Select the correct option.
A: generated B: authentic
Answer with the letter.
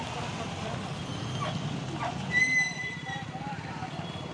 A